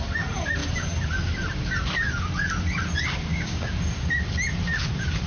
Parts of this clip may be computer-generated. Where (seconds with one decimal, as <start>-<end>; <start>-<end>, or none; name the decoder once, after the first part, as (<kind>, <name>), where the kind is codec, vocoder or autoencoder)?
3.3-3.8 (codec, DAC)